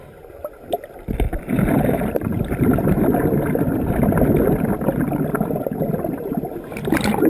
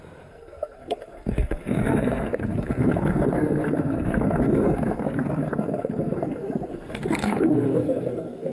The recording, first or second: first